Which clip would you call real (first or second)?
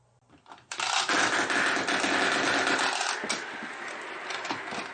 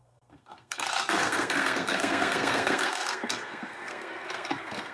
first